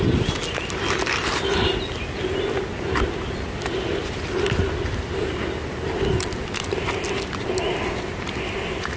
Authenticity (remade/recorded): recorded